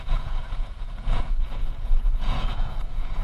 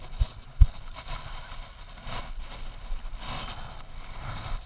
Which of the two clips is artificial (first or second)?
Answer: first